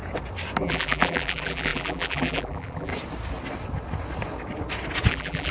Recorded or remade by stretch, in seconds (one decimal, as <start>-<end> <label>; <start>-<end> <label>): 0.0-0.6 recorded; 0.6-2.9 remade; 2.9-5.1 recorded; 5.1-5.5 remade